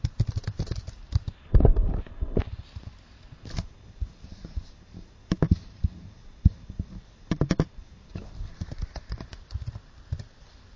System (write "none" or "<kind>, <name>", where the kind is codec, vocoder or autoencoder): vocoder, BigVGAN v2